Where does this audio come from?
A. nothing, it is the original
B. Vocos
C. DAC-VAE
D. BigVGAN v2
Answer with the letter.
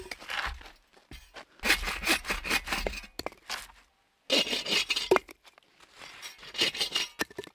A